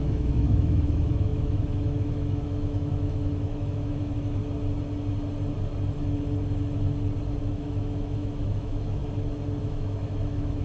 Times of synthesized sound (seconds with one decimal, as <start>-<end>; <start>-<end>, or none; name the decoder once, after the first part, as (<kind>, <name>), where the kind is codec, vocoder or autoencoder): 0.0-4.4 (autoencoder, DAC-VAE); 7.4-9.0; 9.6-10.6